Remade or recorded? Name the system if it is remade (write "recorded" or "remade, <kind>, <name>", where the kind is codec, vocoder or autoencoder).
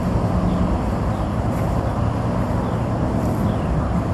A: recorded